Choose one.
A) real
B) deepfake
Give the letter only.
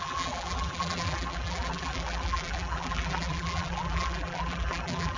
B